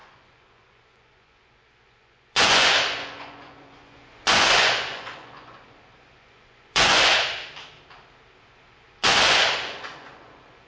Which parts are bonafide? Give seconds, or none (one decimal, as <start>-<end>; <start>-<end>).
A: 7.1-8.4